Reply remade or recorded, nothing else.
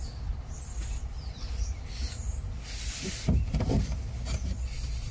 recorded